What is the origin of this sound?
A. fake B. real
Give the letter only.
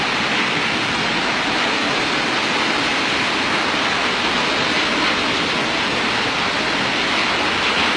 B